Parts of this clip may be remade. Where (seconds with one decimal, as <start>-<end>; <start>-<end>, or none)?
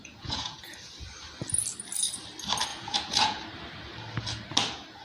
0.0-0.7; 2.7-3.4